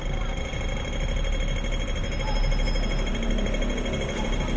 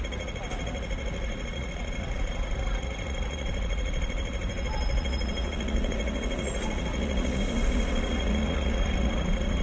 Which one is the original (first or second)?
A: first